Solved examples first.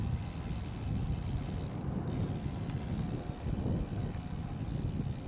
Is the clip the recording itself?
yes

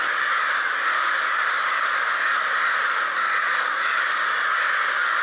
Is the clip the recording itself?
yes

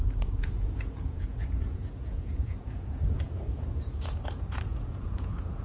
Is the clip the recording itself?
no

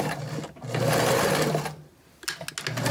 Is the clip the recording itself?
yes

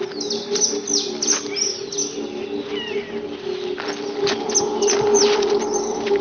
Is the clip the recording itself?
yes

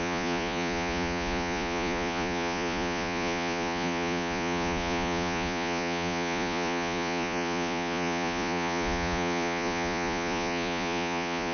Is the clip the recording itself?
no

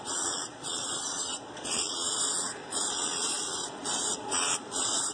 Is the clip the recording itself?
no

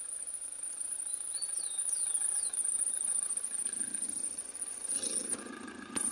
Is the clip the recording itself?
no